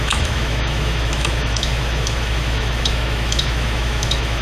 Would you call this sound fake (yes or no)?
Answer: yes